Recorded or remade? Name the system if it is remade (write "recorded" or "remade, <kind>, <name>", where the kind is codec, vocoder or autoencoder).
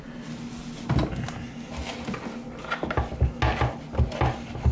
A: recorded